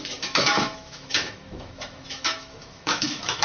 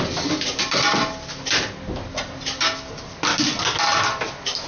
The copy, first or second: first